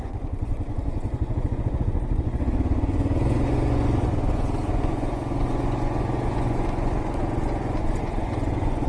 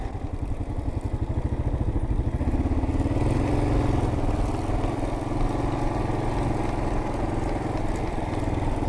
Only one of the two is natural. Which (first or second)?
second